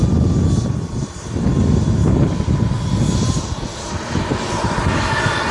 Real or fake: real